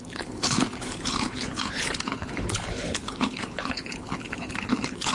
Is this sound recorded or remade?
remade